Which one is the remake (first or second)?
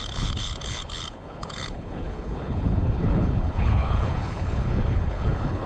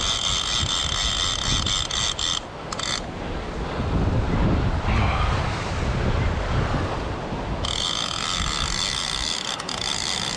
first